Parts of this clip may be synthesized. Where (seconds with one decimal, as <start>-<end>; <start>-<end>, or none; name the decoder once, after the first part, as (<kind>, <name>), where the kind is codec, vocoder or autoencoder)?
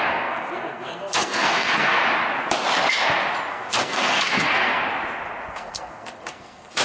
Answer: 0.0-2.0 (codec, SNAC); 3.5-4.8; 5.5-6.8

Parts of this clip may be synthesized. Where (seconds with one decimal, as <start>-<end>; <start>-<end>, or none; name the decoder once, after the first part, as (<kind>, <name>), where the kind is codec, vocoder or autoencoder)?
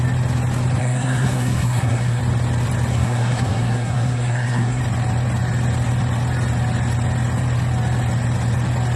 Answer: 0.8-2.2 (codec, SNAC); 2.9-4.8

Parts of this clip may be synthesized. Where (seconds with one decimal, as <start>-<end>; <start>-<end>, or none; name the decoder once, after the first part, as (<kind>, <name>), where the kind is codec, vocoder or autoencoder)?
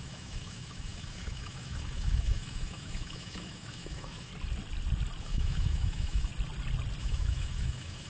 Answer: 0.0-4.3 (autoencoder, DAC-VAE); 5.2-6.3; 7.0-8.1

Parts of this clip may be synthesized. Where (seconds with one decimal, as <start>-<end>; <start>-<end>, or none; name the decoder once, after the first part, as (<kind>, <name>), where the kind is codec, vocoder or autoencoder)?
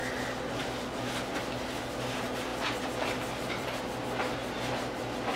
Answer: 2.5-3.8 (vocoder, BigVGAN v2); 4.4-5.4